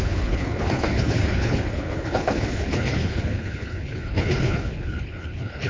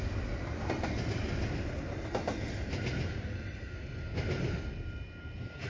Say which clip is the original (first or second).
second